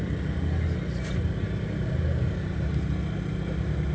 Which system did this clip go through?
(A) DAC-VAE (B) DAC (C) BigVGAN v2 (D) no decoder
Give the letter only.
D